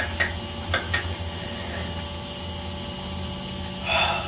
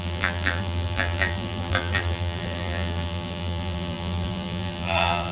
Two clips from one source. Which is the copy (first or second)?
second